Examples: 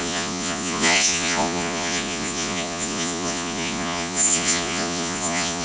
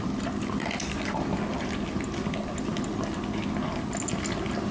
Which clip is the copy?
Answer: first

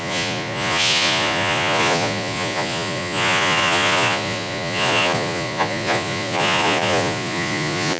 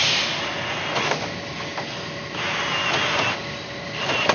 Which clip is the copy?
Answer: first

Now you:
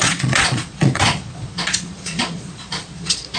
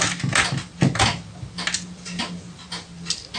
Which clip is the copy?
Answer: first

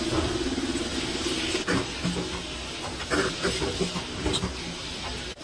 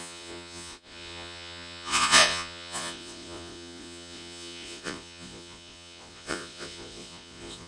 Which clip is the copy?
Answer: second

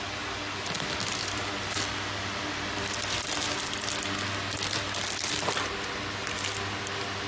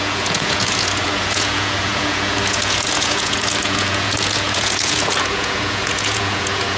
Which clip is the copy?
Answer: second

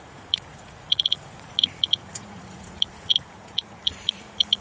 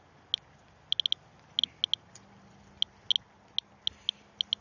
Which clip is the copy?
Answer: first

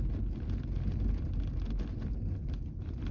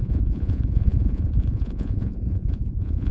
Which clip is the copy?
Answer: second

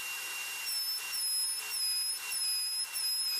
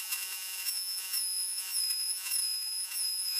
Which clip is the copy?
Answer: second